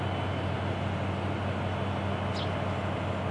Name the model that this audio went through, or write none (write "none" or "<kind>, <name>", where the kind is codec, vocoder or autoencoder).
none